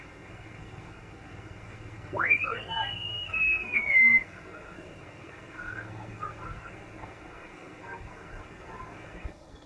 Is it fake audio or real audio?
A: fake